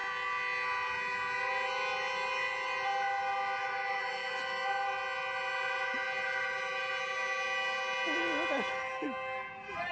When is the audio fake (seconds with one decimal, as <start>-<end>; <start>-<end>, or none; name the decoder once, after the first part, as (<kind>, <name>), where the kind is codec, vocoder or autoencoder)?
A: none